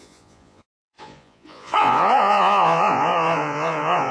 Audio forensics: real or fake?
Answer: fake